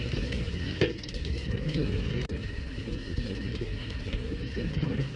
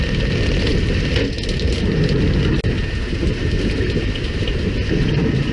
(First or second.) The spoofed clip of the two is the first